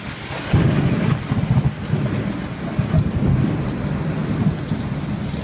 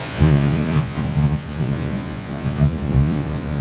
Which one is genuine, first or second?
first